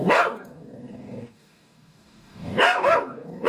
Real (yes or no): no